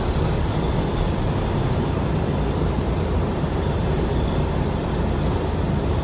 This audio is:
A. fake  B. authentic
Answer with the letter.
B